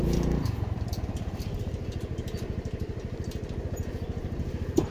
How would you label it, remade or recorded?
recorded